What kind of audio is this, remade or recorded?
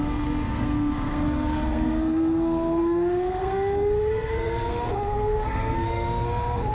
remade